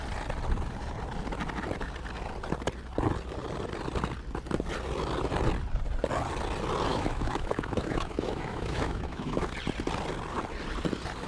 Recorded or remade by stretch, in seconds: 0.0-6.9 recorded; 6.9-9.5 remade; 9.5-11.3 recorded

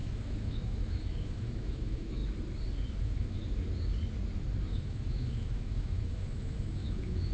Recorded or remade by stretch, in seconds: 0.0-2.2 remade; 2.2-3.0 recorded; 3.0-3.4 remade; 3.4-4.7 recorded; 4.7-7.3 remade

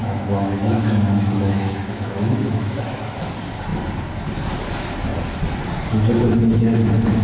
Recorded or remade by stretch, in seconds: 0.0-3.0 remade; 3.0-7.2 recorded